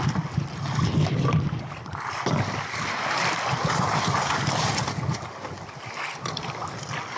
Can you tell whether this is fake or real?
real